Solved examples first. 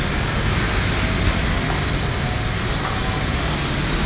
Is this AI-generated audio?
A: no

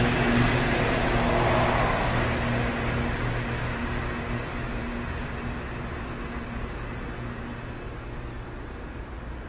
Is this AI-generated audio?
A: no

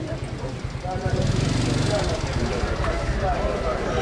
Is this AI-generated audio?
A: no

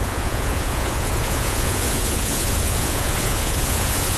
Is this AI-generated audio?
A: yes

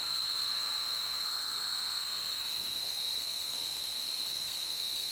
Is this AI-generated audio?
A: yes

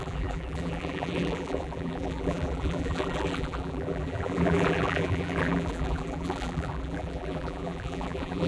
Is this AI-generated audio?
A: yes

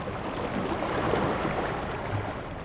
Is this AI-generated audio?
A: no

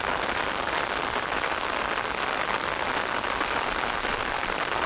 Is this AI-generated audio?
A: no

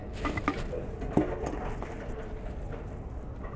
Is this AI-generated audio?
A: no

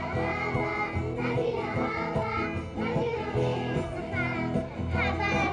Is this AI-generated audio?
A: no